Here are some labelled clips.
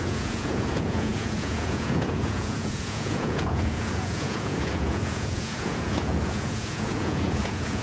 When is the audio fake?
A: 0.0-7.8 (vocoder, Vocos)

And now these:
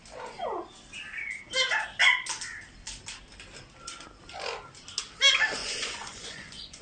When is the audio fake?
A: 5.6-6.8 (vocoder, Vocos)

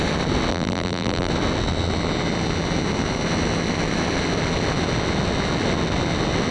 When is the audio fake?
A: 0.5-1.3 (vocoder, BigVGAN v2)

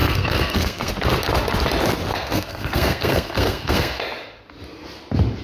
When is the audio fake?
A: 0.0-0.9 (codec, SNAC); 2.1-4.0

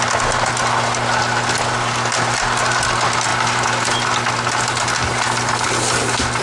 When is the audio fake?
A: none

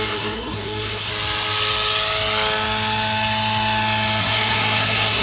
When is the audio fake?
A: 0.0-1.1 (codec, SNAC); 4.2-5.2

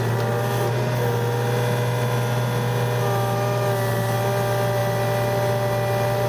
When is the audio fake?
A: none